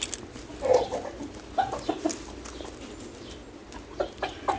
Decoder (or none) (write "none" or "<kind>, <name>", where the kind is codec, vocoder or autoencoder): none